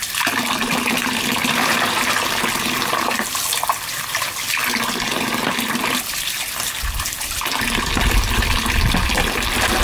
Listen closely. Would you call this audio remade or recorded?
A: recorded